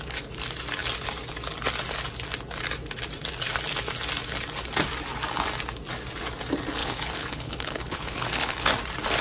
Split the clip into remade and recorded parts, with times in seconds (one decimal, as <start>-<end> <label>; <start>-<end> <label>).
0.0-6.8 recorded; 6.8-8.7 remade; 8.7-9.2 recorded